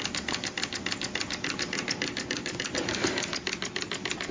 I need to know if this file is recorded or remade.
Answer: recorded